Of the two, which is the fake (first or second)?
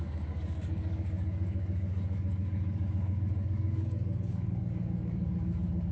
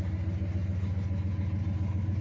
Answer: first